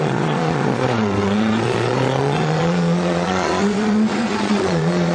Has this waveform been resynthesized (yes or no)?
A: yes